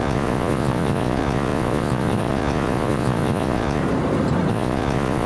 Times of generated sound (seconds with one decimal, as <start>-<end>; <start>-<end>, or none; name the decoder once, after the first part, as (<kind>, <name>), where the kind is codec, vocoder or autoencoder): 0.0-3.8 (vocoder, Vocos); 4.5-5.3